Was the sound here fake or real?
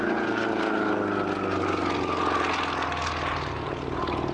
real